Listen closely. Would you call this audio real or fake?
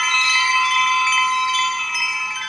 real